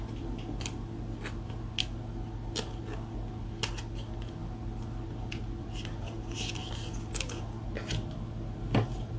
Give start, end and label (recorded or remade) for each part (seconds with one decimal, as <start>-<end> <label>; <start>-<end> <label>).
0.0-9.2 recorded